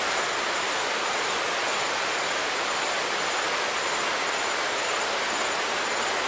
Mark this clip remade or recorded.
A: recorded